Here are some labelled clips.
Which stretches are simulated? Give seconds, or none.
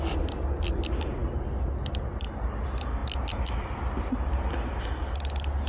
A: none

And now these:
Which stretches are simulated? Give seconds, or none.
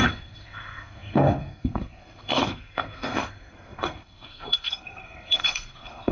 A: 0.0-6.1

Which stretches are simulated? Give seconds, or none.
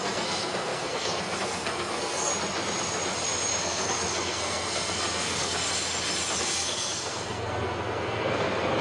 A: 0.0-2.3; 3.6-5.7; 6.4-8.8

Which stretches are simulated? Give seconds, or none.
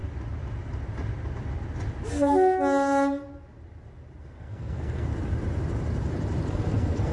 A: 4.2-5.1; 6.5-7.1